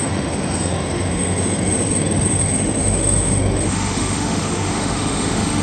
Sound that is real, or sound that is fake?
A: fake